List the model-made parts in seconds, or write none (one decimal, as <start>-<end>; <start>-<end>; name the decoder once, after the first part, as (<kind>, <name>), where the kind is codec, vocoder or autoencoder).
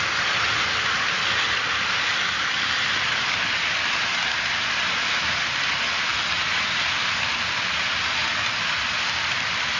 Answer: none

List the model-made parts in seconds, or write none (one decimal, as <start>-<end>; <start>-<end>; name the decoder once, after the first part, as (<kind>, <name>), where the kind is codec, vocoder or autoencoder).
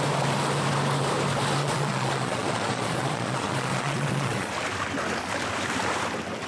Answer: 1.6-4.5 (vocoder, Vocos)